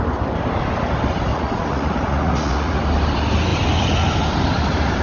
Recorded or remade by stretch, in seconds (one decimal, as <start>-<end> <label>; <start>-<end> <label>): 0.0-1.3 recorded; 1.3-2.8 remade; 2.8-5.0 recorded